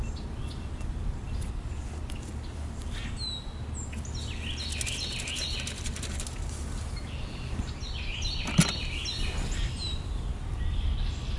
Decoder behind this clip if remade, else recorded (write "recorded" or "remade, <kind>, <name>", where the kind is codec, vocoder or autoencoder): recorded